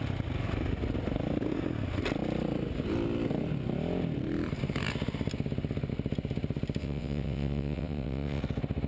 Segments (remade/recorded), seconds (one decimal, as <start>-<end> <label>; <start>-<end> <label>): 0.0-6.8 recorded; 6.8-8.4 remade; 8.4-8.9 recorded